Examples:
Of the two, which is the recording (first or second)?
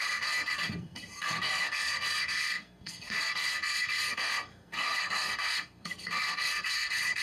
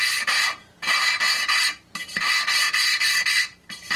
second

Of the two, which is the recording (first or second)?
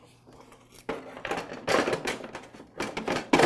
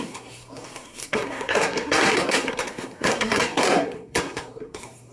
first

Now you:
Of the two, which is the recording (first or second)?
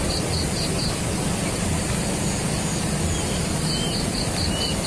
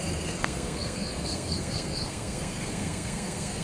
first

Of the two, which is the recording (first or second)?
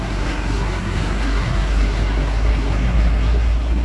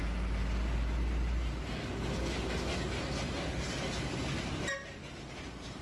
second